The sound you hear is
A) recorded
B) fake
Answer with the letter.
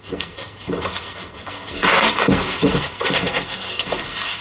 B